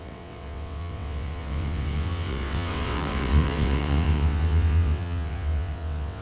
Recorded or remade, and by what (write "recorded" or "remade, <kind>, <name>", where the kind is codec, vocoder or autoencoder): remade, vocoder, WaveNeXt